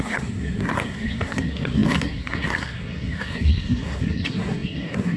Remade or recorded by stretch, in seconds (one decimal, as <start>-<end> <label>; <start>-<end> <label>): 0.0-5.2 remade